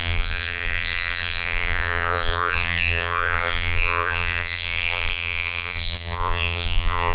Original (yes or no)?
no